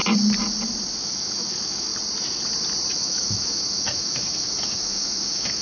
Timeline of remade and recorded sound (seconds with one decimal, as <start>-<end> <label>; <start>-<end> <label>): 0.0-1.0 recorded; 1.0-1.9 remade; 1.9-2.9 recorded; 2.9-5.6 remade